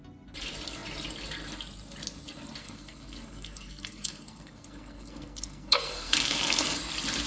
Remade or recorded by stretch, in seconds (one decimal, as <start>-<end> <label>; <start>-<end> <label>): 0.0-2.6 recorded; 2.6-6.8 remade; 6.8-7.3 recorded